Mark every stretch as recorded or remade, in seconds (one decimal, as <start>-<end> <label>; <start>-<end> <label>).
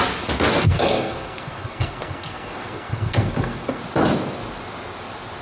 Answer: 0.0-0.6 recorded; 0.6-3.8 remade; 3.8-5.4 recorded